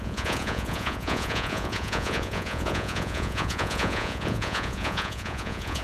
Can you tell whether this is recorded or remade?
remade